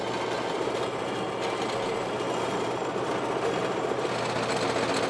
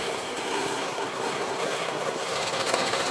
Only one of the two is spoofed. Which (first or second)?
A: second